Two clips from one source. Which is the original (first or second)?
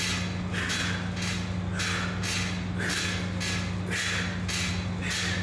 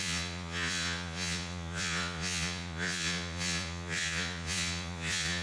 first